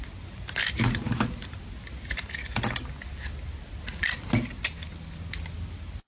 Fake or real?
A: real